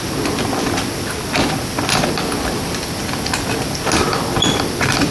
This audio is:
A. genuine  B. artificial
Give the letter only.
A